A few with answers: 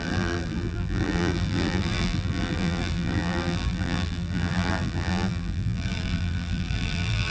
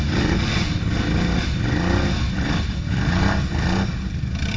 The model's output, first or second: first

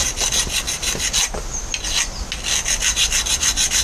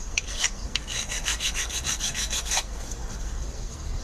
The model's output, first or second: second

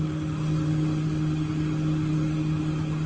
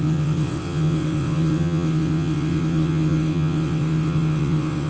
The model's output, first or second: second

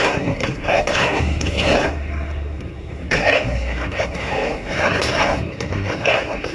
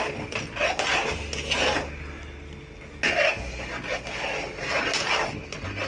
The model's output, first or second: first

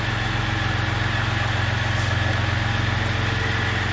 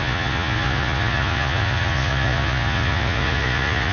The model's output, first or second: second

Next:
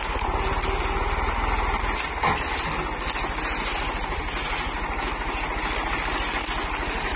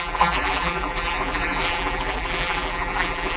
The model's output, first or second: second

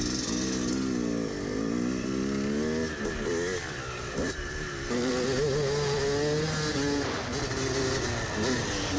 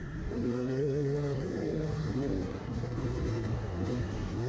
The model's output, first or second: second